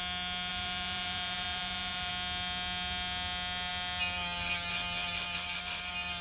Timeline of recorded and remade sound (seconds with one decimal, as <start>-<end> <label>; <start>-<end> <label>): 0.0-0.5 recorded; 0.5-2.1 remade; 2.1-6.2 recorded